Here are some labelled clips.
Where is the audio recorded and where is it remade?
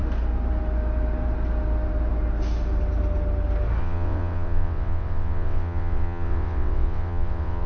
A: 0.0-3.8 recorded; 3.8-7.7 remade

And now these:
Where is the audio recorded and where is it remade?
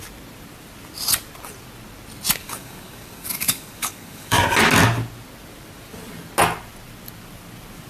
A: 0.0-2.4 recorded; 2.4-4.4 remade; 4.4-7.9 recorded